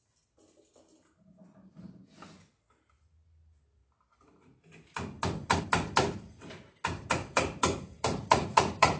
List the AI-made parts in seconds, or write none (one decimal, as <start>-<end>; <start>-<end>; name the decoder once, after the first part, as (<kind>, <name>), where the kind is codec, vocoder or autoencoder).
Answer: 8.2-9.0 (vocoder, Vocos)